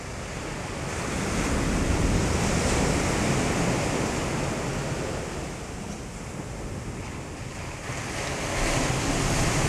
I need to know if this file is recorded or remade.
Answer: recorded